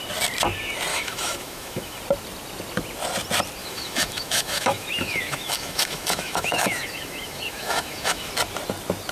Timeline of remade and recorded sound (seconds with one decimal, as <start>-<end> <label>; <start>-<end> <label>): 0.0-0.9 recorded; 0.9-2.0 remade; 2.0-3.6 recorded; 3.6-8.3 remade; 8.3-9.1 recorded